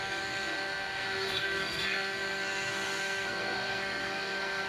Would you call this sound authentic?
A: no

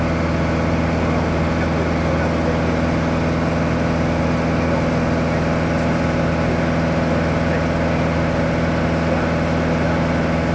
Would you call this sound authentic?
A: yes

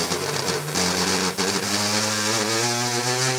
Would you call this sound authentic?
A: yes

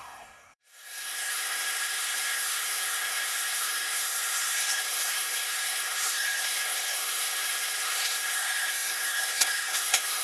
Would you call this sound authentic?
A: no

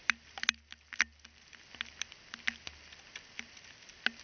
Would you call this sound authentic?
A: yes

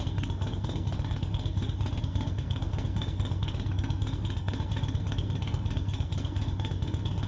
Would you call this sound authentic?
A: no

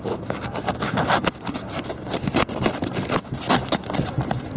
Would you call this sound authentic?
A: yes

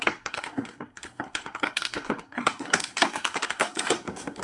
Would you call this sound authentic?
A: no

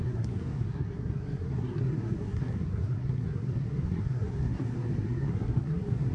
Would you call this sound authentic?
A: no